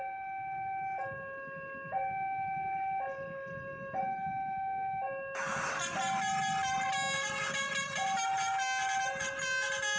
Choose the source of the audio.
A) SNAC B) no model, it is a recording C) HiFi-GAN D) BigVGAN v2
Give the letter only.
B